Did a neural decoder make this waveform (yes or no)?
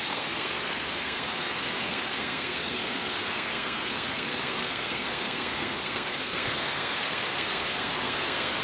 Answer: yes